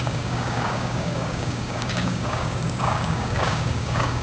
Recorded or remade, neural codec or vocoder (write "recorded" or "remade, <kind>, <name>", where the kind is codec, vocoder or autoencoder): remade, codec, DAC